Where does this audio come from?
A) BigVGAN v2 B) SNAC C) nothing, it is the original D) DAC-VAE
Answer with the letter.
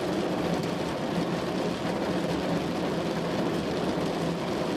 C